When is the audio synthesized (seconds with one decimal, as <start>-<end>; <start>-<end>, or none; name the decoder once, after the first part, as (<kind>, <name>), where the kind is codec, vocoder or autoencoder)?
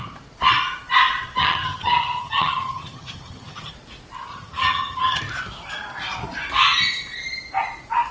1.4-3.7 (vocoder, HiFi-GAN); 4.3-5.2